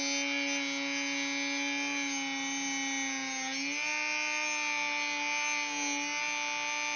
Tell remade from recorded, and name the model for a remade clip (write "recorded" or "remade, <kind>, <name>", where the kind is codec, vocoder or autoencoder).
recorded